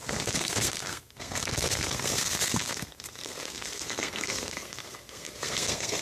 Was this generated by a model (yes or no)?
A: yes